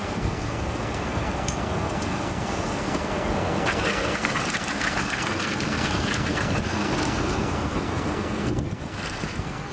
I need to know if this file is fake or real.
fake